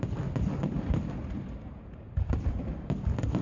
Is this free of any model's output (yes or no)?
yes